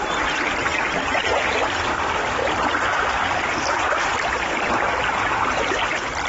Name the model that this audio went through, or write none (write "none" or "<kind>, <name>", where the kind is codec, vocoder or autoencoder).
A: none